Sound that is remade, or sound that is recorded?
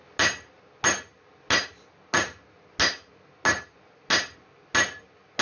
recorded